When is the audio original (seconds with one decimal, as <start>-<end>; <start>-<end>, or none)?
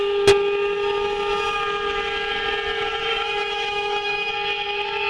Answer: 0.0-3.1; 4.3-5.1